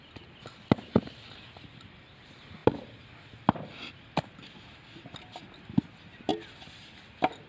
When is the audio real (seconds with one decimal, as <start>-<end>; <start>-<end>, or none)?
0.0-7.5